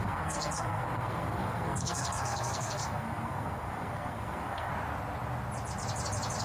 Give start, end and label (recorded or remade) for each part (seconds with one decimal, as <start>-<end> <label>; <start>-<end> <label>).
0.0-4.7 remade; 4.7-6.4 recorded